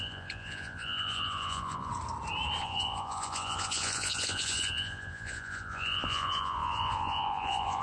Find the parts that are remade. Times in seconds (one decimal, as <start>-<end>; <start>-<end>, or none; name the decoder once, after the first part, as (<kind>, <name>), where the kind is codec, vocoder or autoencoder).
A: 0.0-1.9 (vocoder, Vocos); 2.6-7.8